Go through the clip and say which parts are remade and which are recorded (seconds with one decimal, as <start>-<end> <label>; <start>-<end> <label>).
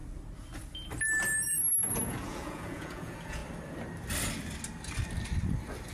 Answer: 0.0-1.9 recorded; 1.9-3.4 remade; 3.4-5.9 recorded